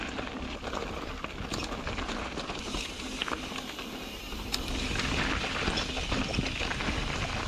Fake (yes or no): no